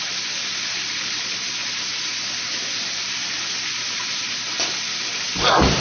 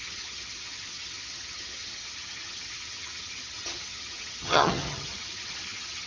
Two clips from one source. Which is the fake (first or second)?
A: second